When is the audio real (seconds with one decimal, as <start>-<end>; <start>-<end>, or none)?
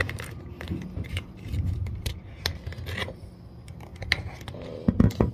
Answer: 2.2-5.3